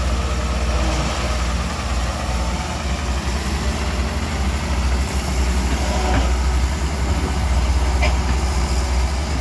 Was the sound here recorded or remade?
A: recorded